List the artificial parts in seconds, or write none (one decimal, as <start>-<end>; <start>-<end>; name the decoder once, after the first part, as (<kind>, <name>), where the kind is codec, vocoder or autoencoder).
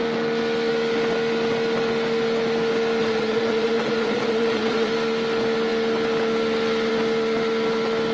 3.0-4.9 (vocoder, Vocos)